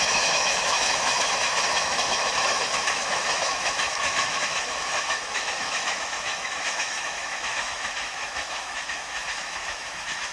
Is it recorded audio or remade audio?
remade